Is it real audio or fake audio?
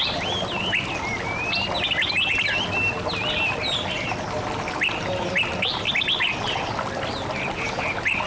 real